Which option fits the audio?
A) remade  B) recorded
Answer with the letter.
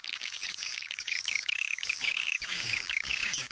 A